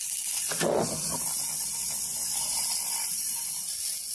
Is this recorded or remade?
recorded